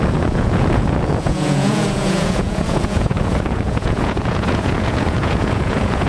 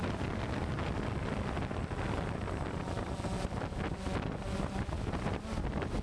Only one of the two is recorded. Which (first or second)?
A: second